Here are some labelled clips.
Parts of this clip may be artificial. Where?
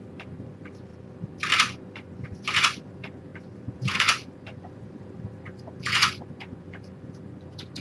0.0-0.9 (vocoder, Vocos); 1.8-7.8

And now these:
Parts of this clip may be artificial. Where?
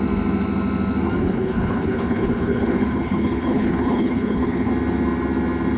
1.2-4.7 (codec, HILCodec)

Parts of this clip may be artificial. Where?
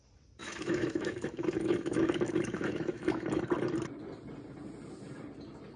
0.4-3.4 (autoencoder, DAC-VAE)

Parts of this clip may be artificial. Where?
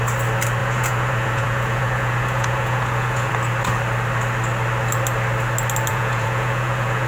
0.6-3.3 (vocoder, Vocos); 5.9-7.1